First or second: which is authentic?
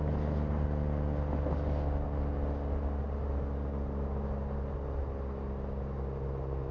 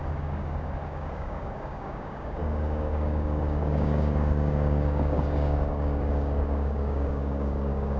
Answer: first